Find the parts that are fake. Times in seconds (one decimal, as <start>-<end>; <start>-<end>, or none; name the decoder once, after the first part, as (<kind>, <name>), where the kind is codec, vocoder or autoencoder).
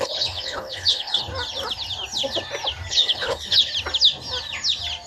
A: 0.0-1.3 (codec, HILCodec); 2.9-3.7